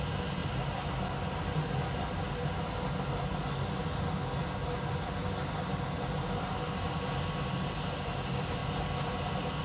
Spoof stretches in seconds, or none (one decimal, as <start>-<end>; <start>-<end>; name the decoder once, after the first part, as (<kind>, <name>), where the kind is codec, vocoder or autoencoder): none